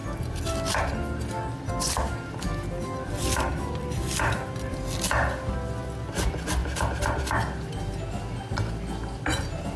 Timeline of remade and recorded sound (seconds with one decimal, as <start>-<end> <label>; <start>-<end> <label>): 0.0-3.5 recorded; 3.5-4.7 remade; 4.7-9.8 recorded